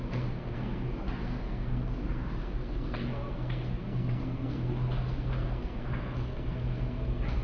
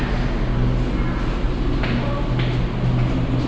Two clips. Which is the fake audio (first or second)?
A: first